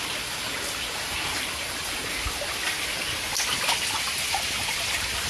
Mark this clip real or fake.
real